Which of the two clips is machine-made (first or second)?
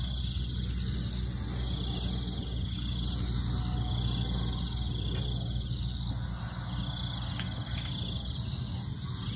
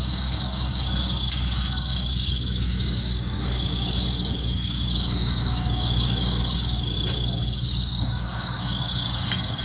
second